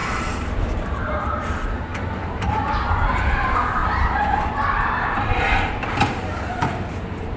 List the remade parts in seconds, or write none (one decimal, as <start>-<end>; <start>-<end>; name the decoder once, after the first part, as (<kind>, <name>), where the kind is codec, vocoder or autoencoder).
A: 0.8-3.8 (vocoder, BigVGAN v2); 6.0-7.4